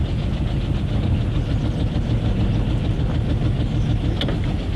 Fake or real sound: real